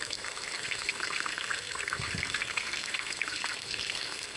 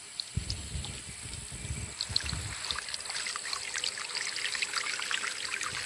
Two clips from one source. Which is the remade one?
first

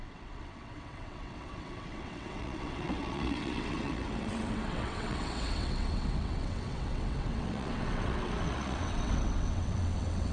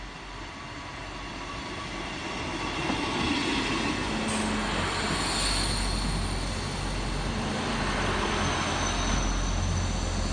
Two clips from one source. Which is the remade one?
first